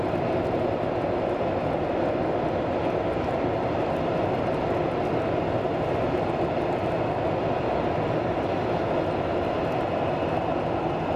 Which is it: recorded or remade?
recorded